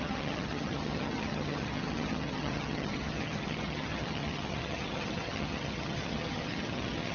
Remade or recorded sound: remade